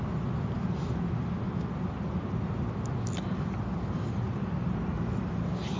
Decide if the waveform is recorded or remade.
recorded